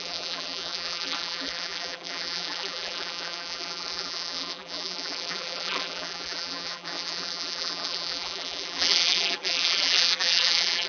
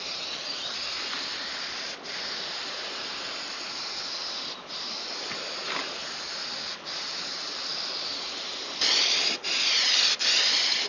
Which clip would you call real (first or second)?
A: second